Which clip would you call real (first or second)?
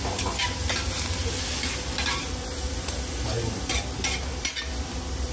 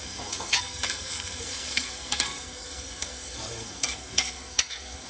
first